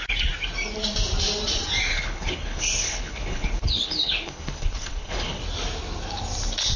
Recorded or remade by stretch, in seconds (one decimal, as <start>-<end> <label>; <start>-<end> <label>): 0.0-1.9 recorded; 1.9-5.4 remade; 5.4-6.8 recorded